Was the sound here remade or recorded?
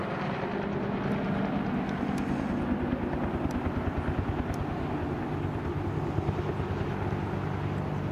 recorded